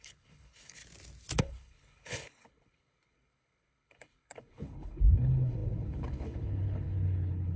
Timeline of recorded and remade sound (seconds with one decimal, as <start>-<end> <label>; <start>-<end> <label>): 0.0-0.8 remade; 0.8-1.4 recorded; 1.4-7.6 remade